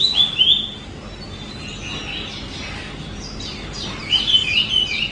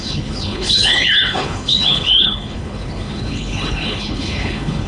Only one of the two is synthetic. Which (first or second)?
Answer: second